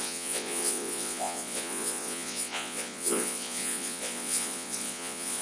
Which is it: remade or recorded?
remade